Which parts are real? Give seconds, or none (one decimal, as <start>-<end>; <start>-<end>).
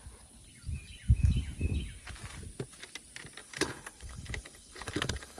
0.0-3.4